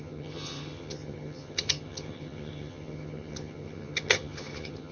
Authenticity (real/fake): fake